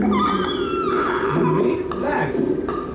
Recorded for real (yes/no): yes